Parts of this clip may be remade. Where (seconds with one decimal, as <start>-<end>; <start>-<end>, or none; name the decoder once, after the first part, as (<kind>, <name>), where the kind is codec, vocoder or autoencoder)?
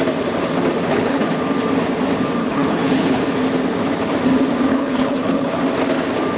0.9-1.4 (codec, HILCodec); 2.4-3.2; 4.7-5.6